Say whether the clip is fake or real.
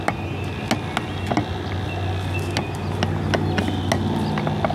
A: real